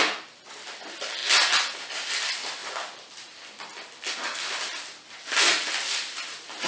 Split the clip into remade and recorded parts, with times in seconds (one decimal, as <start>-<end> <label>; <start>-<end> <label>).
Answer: 0.0-6.7 recorded